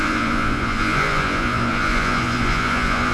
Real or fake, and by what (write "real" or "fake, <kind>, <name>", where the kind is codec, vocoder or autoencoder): fake, vocoder, Vocos